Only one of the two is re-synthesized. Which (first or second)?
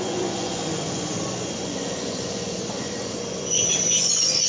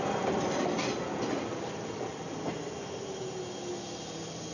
first